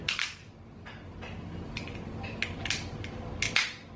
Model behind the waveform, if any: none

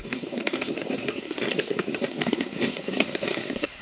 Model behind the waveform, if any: codec, SNAC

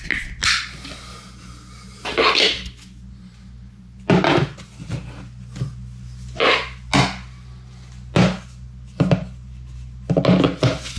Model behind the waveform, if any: none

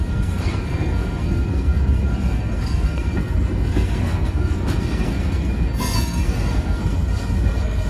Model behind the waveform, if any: codec, SNAC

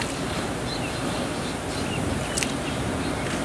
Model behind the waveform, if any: none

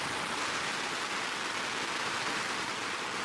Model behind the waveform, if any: none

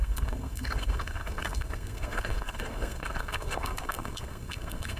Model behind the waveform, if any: codec, SNAC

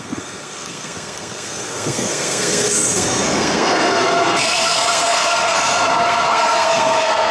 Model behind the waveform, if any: codec, SNAC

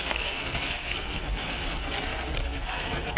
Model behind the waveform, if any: codec, SNAC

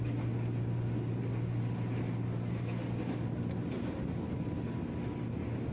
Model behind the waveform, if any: none